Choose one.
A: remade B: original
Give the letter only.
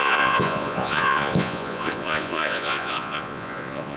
A